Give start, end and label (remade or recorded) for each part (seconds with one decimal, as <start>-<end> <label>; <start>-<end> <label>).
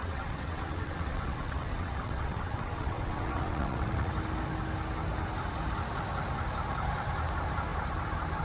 0.0-4.1 remade; 4.1-8.4 recorded